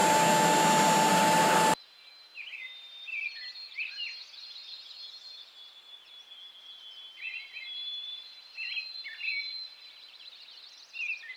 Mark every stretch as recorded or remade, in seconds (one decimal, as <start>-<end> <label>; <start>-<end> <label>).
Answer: 0.0-11.4 recorded